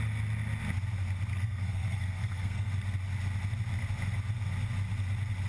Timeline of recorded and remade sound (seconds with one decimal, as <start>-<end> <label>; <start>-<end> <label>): 0.0-1.3 recorded; 1.3-2.7 remade; 2.7-5.5 recorded